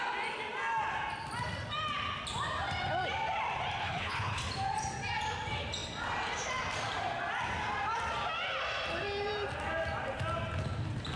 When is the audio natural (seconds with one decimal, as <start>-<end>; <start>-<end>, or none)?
0.0-3.8; 4.4-11.2